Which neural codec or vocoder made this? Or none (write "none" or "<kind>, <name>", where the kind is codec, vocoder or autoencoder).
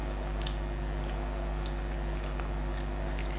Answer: none